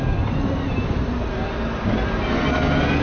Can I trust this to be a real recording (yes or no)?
yes